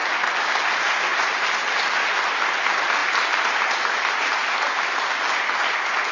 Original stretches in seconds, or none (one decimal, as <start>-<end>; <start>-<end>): 0.0-1.1; 2.2-3.0; 3.6-6.1